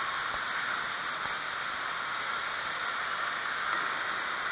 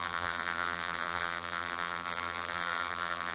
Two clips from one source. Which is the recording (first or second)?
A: first